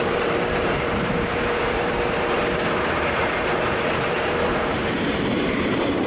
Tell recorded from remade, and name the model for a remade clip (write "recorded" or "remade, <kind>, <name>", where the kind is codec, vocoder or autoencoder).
remade, vocoder, BigVGAN v2